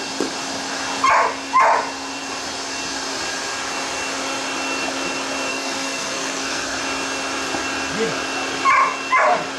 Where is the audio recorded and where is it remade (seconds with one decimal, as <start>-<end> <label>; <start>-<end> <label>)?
0.0-5.5 recorded; 5.5-6.8 remade; 6.8-9.6 recorded